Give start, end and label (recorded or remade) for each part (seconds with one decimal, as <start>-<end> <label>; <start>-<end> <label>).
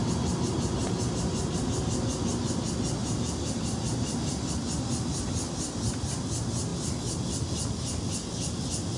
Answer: 0.0-0.8 recorded; 0.8-1.9 remade; 1.9-3.0 recorded; 3.0-4.5 remade; 4.5-9.0 recorded